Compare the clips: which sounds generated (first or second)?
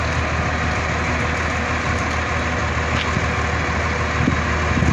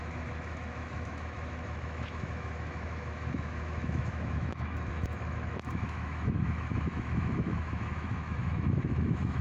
second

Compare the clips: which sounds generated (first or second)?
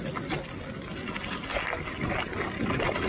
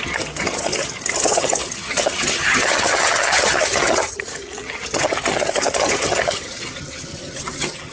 second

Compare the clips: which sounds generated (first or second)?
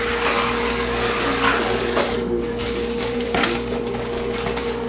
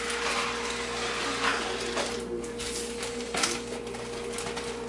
first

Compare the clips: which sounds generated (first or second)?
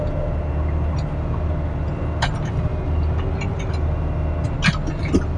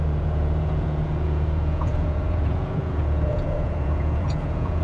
second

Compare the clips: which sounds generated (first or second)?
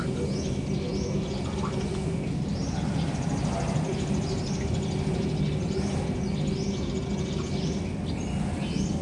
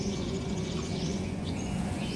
second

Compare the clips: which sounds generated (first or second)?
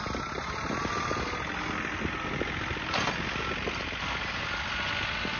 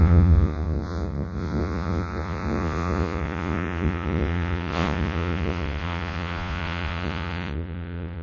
second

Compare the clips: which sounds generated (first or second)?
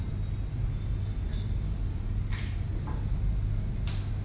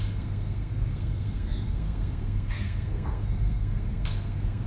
second